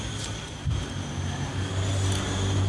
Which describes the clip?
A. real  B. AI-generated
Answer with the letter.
A